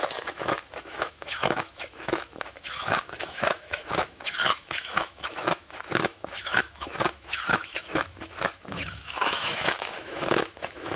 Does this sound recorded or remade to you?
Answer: remade